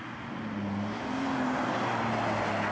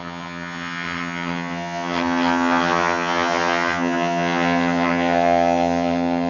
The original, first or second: first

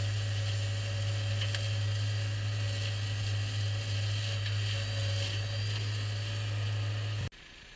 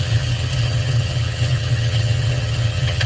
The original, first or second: first